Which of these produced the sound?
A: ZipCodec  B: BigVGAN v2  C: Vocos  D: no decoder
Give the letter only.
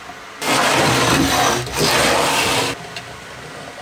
D